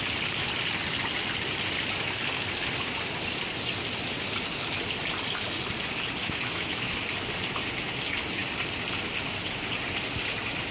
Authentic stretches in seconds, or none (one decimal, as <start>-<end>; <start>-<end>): 0.0-6.2; 6.9-10.7